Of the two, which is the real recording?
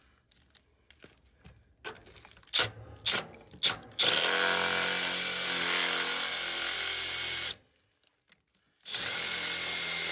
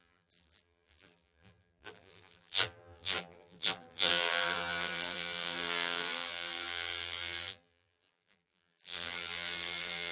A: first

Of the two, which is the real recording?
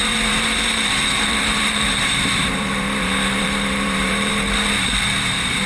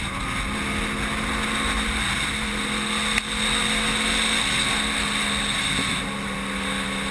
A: second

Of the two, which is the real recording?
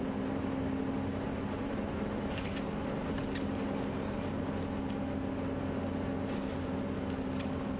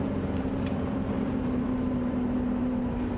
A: first